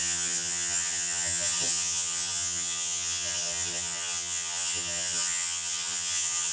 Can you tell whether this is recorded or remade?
remade